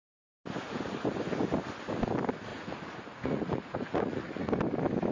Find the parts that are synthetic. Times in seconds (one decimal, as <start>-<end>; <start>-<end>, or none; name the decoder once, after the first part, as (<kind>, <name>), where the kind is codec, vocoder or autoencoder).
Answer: 2.5-4.5 (vocoder, Vocos)